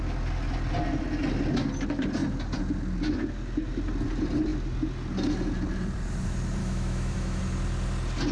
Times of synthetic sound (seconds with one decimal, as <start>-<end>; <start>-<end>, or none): 6.6-7.4